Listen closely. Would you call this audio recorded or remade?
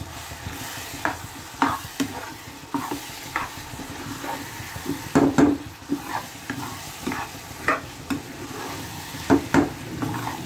recorded